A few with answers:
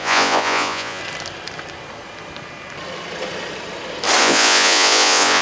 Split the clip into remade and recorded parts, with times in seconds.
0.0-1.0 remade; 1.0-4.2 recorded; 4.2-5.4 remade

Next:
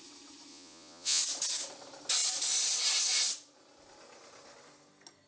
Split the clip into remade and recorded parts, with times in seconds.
0.0-0.5 recorded; 0.5-1.2 remade; 1.2-5.3 recorded

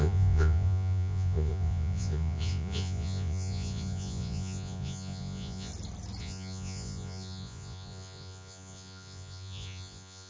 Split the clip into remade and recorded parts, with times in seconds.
0.0-5.7 remade; 5.7-6.2 recorded; 6.2-10.3 remade

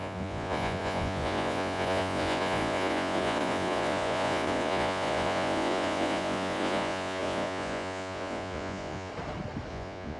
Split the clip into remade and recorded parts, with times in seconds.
0.0-9.1 remade; 9.1-9.7 recorded; 9.7-10.2 remade

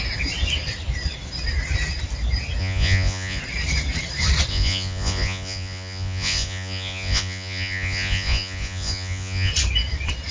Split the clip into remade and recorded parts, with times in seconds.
0.0-2.6 recorded; 2.6-3.4 remade; 3.4-4.5 recorded; 4.5-9.5 remade; 9.5-10.3 recorded

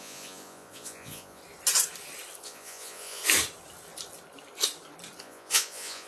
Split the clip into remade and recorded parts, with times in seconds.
0.0-1.4 remade; 1.4-2.4 recorded; 2.4-3.2 remade; 3.2-5.2 recorded; 5.2-6.1 remade

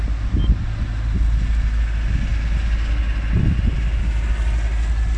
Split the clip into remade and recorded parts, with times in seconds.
0.0-5.2 recorded